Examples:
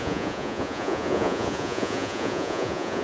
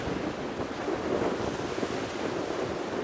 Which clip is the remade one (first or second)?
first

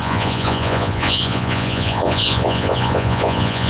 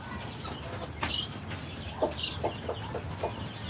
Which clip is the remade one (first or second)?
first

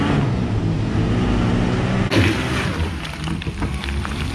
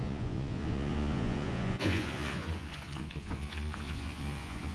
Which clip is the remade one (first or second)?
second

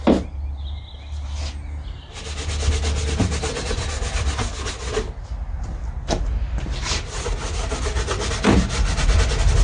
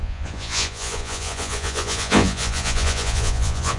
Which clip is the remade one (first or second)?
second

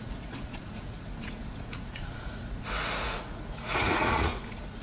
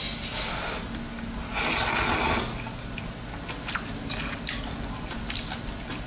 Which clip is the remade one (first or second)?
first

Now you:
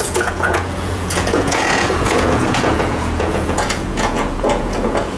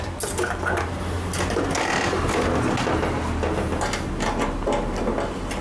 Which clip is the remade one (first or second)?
first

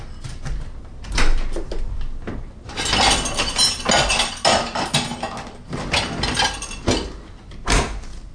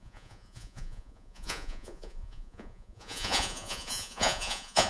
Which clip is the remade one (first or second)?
second